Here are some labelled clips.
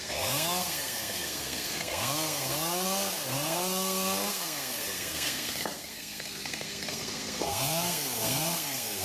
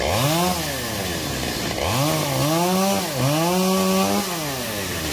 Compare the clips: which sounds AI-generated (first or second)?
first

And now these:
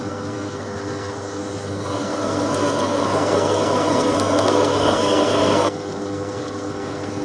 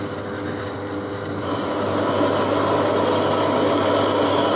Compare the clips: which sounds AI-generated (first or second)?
first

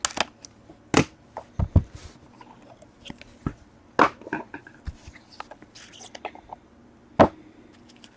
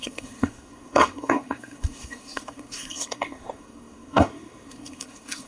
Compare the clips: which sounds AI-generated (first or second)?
second